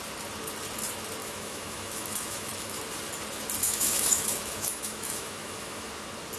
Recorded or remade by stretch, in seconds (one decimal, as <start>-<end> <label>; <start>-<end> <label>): 0.0-1.2 recorded; 1.2-2.8 remade; 2.8-3.6 recorded; 3.6-5.9 remade; 5.9-6.4 recorded